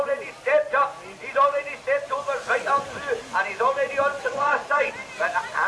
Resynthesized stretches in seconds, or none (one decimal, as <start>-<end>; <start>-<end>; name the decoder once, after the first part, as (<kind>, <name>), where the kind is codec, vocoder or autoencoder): 4.1-4.9 (vocoder, WaveNeXt)